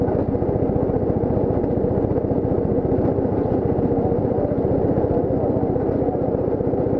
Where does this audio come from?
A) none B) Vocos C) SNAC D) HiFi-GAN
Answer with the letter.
A